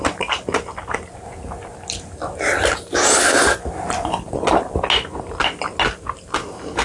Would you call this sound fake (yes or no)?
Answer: no